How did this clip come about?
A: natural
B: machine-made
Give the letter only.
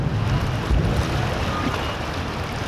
A